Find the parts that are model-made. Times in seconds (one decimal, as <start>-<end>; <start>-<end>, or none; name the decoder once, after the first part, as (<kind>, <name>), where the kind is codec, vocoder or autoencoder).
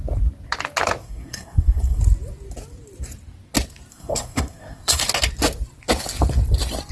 1.0-2.0 (codec, SNAC); 3.9-5.0